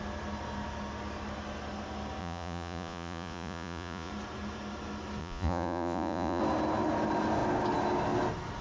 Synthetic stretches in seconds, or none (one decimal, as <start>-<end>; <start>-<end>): 2.2-4.1; 5.2-6.4